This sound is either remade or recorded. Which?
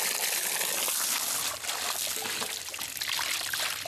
recorded